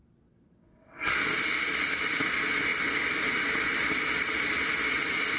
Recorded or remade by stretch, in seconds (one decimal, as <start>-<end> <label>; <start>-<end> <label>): 0.0-5.4 recorded